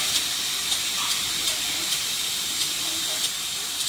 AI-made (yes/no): no